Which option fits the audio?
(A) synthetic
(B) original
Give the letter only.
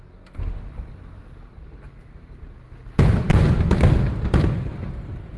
B